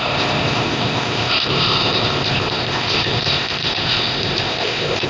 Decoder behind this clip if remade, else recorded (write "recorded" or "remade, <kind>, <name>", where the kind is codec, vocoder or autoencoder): remade, codec, ZipCodec